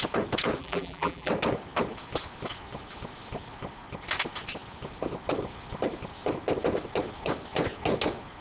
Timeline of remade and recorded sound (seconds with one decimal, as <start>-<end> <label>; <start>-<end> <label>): 0.0-0.6 recorded; 0.6-1.3 remade; 1.3-8.4 recorded